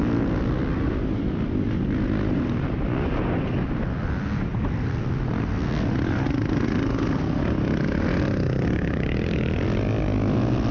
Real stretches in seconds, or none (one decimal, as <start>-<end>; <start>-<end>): 0.0-10.7